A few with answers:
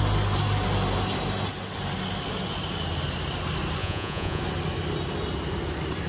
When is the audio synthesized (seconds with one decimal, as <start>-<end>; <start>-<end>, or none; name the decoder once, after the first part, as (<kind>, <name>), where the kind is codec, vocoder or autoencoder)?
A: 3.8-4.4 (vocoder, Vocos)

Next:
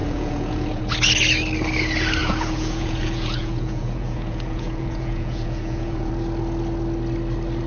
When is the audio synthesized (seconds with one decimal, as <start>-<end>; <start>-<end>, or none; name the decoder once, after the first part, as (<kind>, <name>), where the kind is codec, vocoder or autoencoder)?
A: 0.0-0.8 (vocoder, Vocos); 2.2-6.1

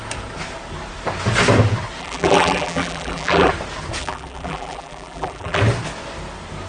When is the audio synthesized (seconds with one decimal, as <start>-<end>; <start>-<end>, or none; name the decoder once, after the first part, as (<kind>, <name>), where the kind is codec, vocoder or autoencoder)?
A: 2.0-3.5 (vocoder, BigVGAN v2); 4.0-5.6

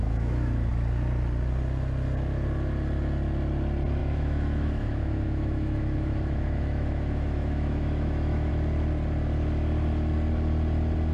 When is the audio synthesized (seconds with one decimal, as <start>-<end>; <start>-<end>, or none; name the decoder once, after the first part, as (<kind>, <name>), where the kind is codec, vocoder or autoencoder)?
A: 0.0-0.7 (autoencoder, DAC-VAE); 4.0-8.5